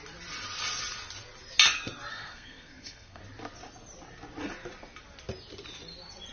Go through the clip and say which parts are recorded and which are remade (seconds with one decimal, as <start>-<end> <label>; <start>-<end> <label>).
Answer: 0.0-2.1 recorded; 2.1-3.2 remade; 3.2-6.3 recorded